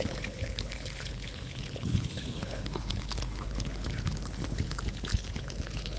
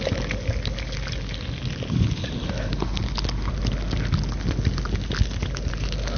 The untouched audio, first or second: second